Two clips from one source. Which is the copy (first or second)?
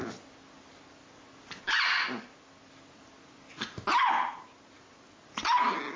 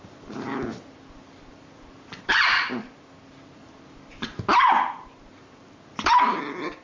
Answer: second